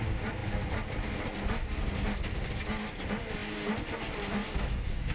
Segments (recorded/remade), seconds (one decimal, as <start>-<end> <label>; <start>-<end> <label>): 0.0-4.4 recorded; 4.4-5.1 remade